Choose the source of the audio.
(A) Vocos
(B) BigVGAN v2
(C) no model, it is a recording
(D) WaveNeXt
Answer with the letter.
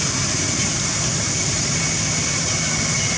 C